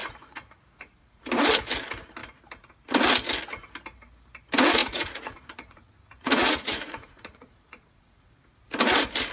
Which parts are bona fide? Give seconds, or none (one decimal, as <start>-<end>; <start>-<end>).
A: 1.2-4.8; 8.3-9.3

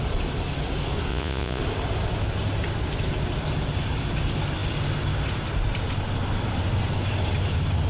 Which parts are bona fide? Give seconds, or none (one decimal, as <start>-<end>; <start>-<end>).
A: 0.0-1.1; 1.6-7.9